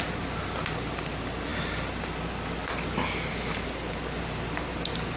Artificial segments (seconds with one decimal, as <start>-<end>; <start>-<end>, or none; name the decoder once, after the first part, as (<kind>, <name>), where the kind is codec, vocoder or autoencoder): none